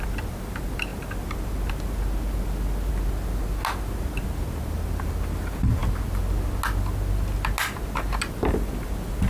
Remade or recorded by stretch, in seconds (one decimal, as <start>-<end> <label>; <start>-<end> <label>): 0.0-9.3 recorded